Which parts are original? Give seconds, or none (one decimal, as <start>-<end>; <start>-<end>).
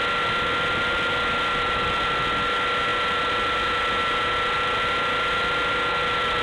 0.0-6.4